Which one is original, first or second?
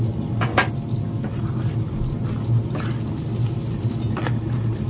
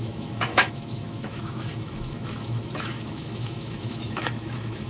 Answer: first